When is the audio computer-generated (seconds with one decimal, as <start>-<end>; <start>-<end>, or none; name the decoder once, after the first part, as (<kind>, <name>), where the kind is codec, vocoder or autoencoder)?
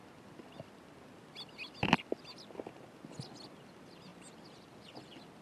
none